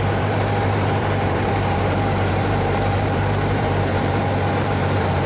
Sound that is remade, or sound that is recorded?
remade